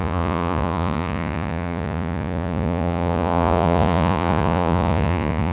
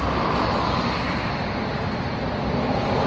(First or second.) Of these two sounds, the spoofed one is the first